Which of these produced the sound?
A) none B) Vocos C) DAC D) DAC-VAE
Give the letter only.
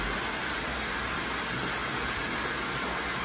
A